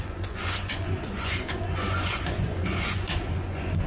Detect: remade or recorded remade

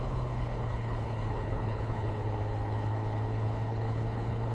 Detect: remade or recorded remade